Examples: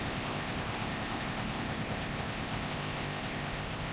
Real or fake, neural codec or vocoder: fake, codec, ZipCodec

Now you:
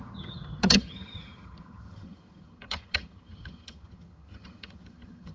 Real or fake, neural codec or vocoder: fake, vocoder, HiFi-GAN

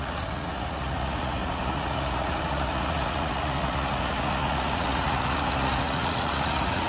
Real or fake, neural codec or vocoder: fake, vocoder, Vocos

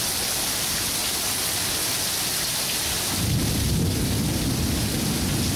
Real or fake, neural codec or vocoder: real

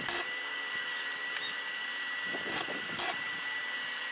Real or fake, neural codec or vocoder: real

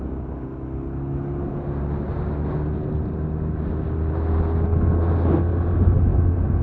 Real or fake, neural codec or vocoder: real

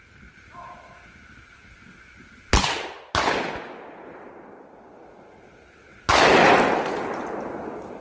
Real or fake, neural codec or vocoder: real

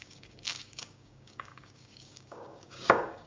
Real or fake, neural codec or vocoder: fake, codec, DAC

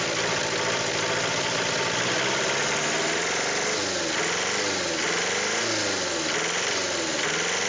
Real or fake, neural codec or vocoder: real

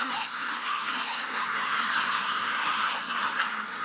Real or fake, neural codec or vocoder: fake, codec, SNAC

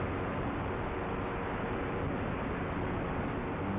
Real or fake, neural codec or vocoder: real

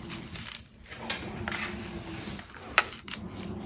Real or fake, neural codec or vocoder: fake, vocoder, BigVGAN v2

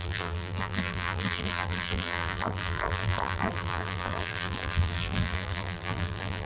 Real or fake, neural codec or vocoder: fake, vocoder, BigVGAN v2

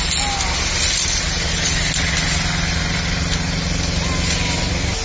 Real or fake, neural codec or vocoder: real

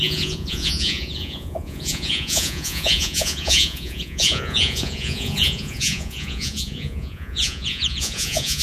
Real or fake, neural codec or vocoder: fake, vocoder, Vocos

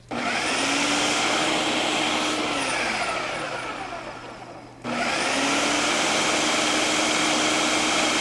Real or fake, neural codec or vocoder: real